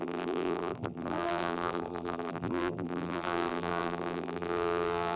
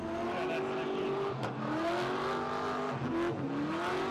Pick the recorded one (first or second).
second